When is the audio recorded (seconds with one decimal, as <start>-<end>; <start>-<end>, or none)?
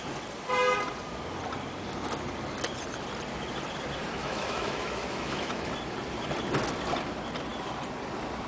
0.0-4.2; 5.7-8.5